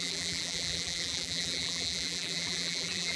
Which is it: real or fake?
fake